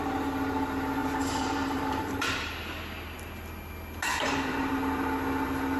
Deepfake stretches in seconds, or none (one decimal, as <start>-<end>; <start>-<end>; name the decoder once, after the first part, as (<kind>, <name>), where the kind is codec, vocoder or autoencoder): 1.0-2.5 (vocoder, BigVGAN v2); 4.1-4.7